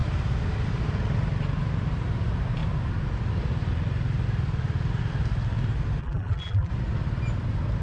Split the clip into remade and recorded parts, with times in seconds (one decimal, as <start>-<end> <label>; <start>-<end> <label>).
0.0-6.0 recorded; 6.0-6.7 remade; 6.7-7.8 recorded